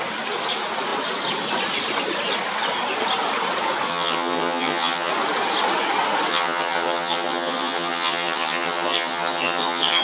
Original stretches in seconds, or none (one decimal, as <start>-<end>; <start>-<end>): 0.0-3.9; 5.1-6.3